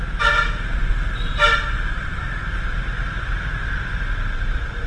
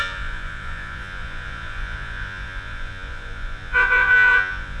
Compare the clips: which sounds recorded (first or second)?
first